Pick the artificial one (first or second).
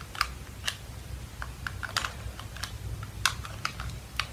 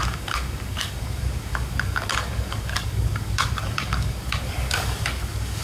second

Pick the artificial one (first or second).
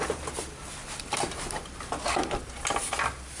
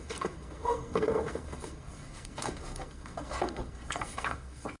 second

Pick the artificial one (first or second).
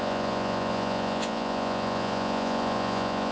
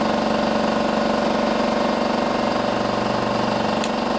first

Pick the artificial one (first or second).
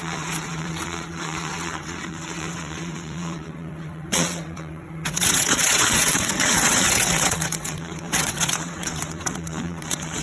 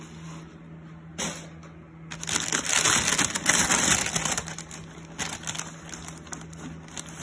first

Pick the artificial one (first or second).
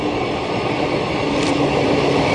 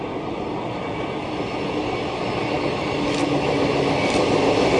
first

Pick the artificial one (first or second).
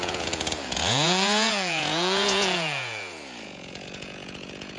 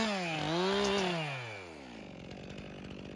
first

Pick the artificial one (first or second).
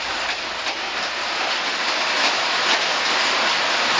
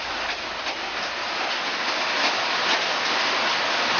first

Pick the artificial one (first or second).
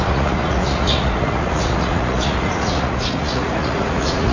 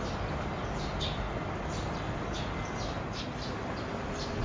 first